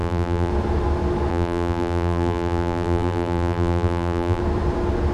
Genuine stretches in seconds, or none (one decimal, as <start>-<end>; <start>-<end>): 0.5-1.3; 4.4-5.1